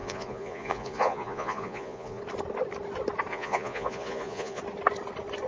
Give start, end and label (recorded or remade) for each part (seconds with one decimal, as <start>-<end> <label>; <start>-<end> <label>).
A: 0.0-2.2 remade; 2.2-3.3 recorded; 3.3-4.6 remade; 4.6-5.5 recorded